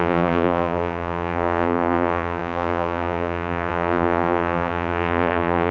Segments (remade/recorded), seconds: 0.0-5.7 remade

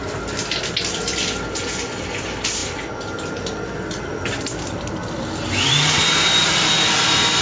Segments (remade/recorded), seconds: 0.0-0.6 recorded; 0.6-7.4 remade

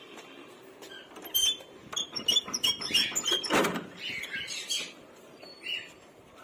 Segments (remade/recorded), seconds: 0.0-1.8 remade; 1.8-3.6 recorded; 3.6-6.4 remade

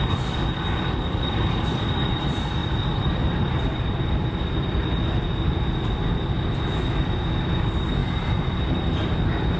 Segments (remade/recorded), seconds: 0.0-2.6 recorded; 2.6-4.2 remade; 4.2-8.0 recorded; 8.0-8.7 remade; 8.7-9.6 recorded

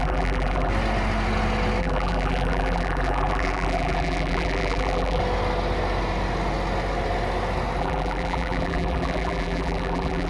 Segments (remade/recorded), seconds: 0.0-0.7 remade; 0.7-1.8 recorded; 1.8-5.2 remade; 5.2-7.8 recorded; 7.8-10.3 remade

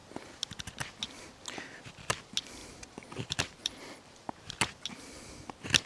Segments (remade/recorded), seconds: 0.0-2.6 recorded; 2.6-4.5 remade; 4.5-5.9 recorded

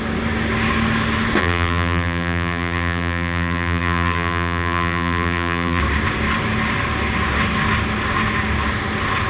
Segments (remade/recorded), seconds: 0.0-1.4 recorded; 1.4-5.8 remade; 5.8-9.3 recorded